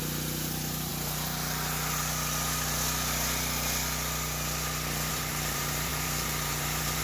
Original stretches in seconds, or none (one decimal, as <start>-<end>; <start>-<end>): 0.9-5.1